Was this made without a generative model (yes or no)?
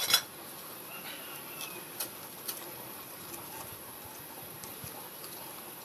yes